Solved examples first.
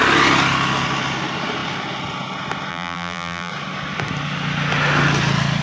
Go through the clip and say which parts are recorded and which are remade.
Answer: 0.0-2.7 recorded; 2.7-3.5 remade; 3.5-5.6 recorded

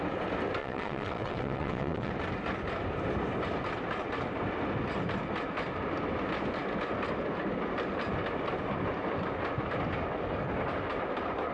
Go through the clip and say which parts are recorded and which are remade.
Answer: 0.0-0.6 recorded; 0.6-2.1 remade; 2.1-11.5 recorded

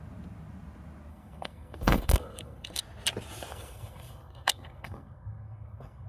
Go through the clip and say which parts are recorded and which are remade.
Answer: 0.0-1.1 recorded; 1.1-2.8 remade; 2.8-3.5 recorded; 3.5-6.1 remade